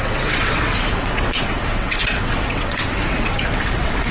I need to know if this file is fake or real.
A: fake